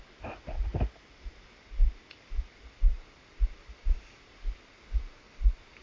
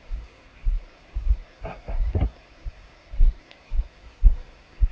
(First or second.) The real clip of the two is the first